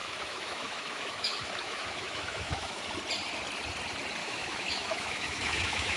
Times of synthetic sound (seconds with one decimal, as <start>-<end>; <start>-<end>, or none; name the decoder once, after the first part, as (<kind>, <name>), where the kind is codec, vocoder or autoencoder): 0.0-2.8 (autoencoder, DAC-VAE); 4.2-6.0